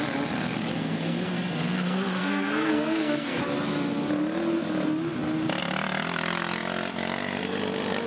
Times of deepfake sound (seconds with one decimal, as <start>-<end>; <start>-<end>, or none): 0.7-3.4